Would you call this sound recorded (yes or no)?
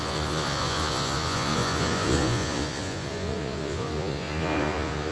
no